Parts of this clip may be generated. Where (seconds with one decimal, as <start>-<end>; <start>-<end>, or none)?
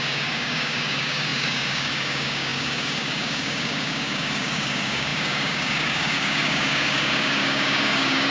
0.0-8.3